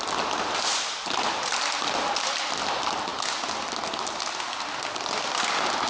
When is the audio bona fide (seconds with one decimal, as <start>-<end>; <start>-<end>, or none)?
0.0-5.9